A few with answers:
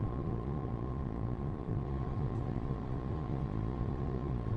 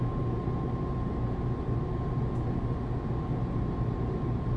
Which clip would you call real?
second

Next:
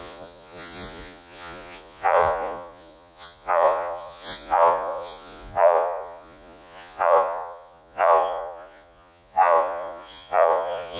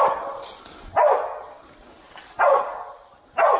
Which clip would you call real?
second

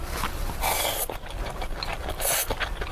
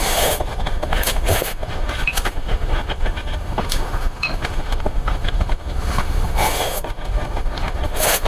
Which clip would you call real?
first